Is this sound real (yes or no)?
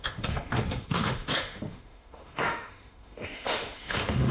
no